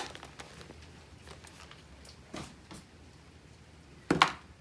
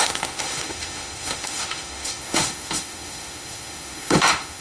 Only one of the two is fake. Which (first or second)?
second